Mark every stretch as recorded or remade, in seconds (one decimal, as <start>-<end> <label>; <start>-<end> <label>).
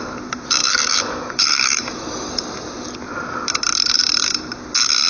0.0-0.6 recorded; 0.6-2.3 remade; 2.3-5.1 recorded